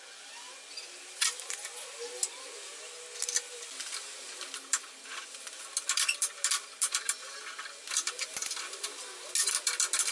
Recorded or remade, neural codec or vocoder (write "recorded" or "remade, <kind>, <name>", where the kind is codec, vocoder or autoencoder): recorded